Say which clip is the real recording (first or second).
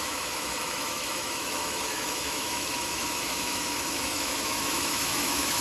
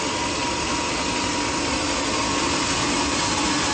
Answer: second